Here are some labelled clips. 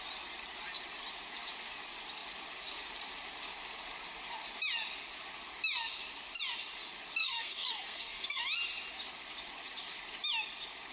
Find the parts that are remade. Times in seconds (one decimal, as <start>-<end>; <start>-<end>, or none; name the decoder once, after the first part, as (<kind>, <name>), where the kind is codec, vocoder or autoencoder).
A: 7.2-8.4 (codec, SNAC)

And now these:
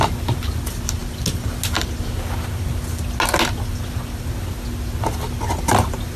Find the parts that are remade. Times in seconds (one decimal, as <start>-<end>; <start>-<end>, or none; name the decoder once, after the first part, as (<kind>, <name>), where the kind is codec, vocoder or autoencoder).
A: none

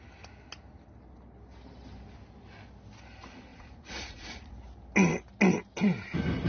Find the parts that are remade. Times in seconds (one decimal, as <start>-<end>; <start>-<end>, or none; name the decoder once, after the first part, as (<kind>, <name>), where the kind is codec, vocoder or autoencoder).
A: 3.5-4.5 (vocoder, Vocos)

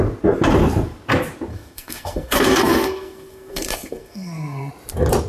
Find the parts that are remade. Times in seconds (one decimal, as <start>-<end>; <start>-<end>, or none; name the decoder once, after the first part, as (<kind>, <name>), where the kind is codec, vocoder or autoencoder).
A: 1.5-4.7 (codec, SNAC)